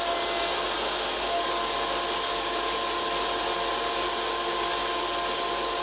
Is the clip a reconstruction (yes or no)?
no